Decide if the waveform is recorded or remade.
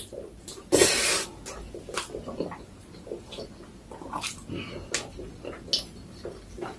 recorded